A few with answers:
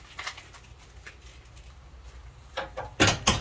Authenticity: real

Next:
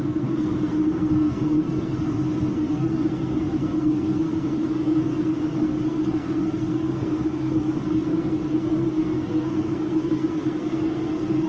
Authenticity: fake